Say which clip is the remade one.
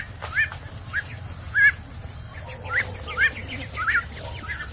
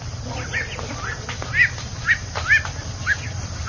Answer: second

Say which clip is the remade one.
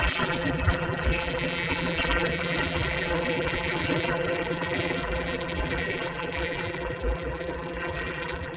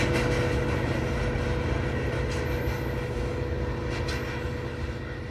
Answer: first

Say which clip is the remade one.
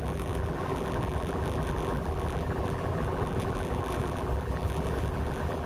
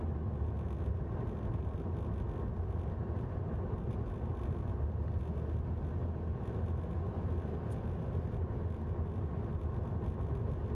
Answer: first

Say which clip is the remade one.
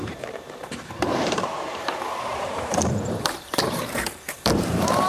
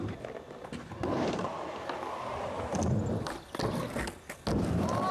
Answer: first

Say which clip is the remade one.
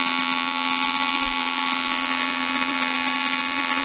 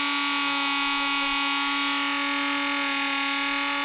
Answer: first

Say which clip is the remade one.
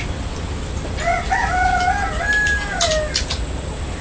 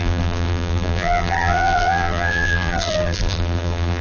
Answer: second